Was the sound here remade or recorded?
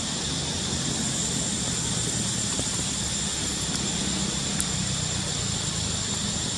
recorded